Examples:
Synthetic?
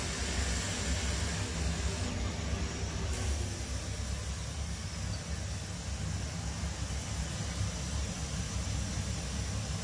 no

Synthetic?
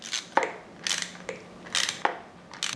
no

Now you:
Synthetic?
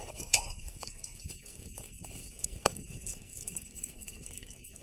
yes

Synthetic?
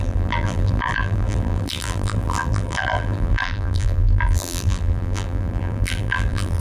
yes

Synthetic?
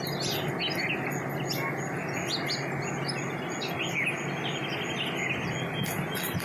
no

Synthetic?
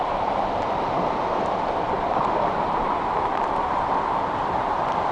yes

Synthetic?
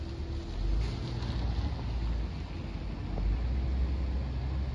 no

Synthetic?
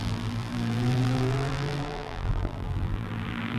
yes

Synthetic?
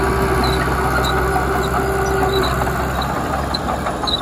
no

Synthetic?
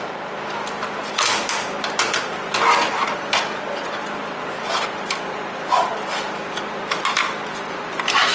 no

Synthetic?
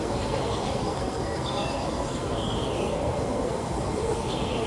yes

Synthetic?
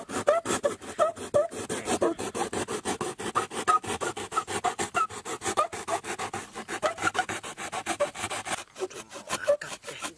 no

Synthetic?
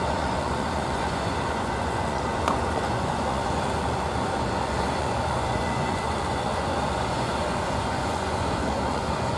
yes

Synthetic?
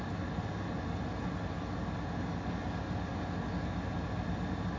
no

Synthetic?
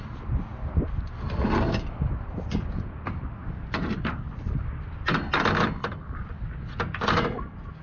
no